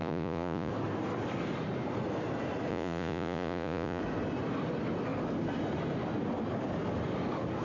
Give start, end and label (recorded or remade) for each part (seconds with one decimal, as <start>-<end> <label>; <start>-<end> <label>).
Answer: 0.0-0.7 remade; 0.7-2.7 recorded; 2.7-4.0 remade; 4.0-7.6 recorded